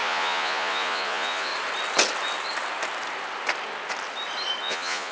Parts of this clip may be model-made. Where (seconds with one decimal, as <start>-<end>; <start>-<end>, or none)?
0.0-1.5; 4.6-5.1